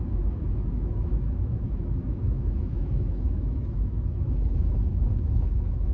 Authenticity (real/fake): fake